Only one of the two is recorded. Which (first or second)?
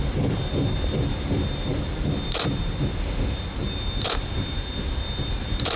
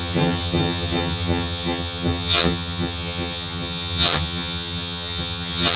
first